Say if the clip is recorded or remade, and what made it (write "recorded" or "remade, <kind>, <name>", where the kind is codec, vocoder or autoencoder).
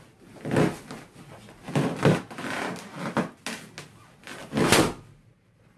recorded